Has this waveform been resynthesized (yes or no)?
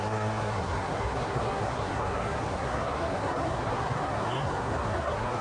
yes